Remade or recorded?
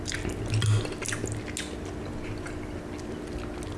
recorded